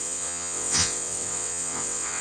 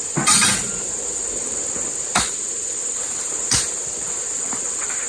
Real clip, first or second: second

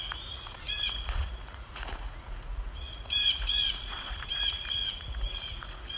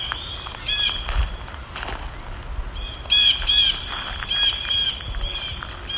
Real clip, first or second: second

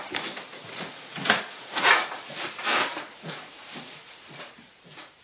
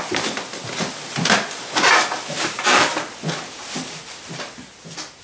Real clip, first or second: second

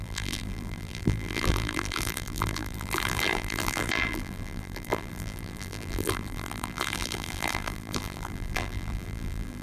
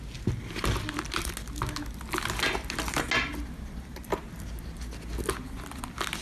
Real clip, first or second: second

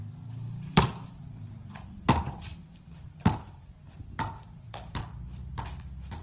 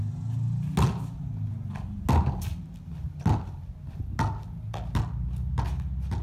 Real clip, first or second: second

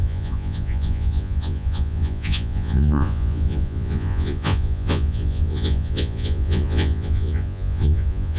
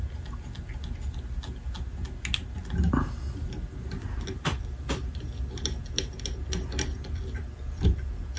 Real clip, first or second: second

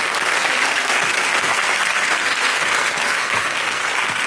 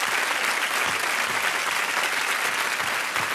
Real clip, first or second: second